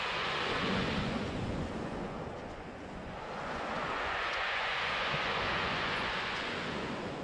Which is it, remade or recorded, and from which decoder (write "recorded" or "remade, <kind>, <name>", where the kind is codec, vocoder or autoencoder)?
remade, vocoder, Vocos